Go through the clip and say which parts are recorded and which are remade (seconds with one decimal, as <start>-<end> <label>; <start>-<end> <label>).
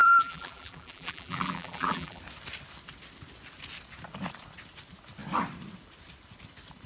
0.0-2.2 remade; 2.2-6.9 recorded